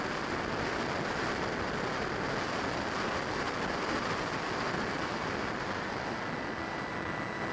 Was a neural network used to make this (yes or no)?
no